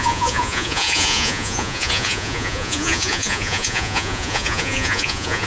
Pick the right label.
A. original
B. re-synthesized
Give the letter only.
B